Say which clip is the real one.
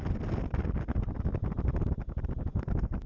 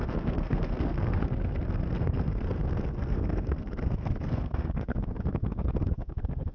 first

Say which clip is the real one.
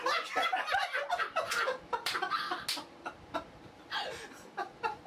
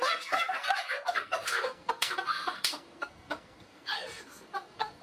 first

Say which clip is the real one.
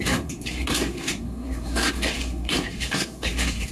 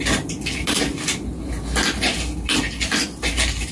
second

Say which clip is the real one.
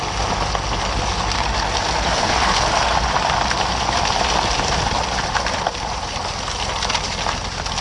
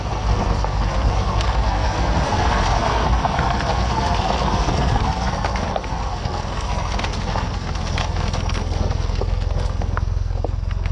first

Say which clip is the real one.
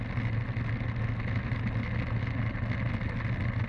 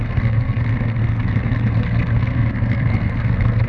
first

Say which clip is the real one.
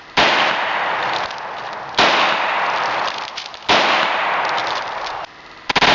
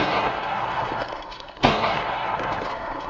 first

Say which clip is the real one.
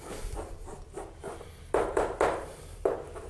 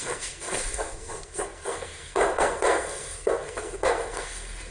first